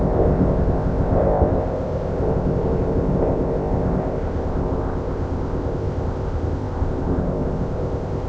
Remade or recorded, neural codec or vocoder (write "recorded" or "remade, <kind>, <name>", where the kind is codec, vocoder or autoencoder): remade, codec, ZipCodec